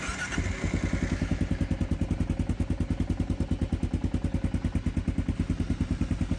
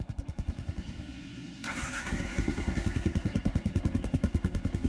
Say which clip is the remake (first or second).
second